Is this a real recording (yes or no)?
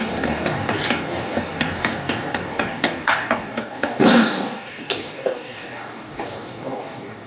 no